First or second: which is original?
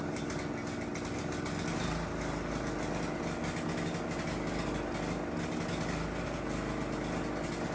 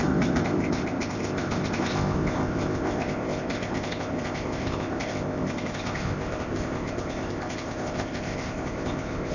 first